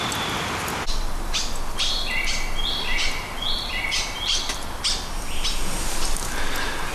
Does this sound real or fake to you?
real